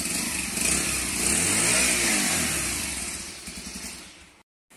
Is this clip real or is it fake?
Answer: real